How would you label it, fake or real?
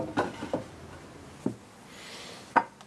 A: real